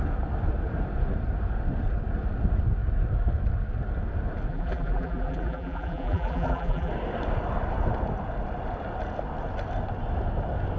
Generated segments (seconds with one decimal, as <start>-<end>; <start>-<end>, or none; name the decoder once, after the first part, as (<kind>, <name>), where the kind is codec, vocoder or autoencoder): 4.5-6.9 (vocoder, BigVGAN v2)